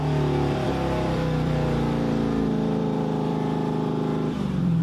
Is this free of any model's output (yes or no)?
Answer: no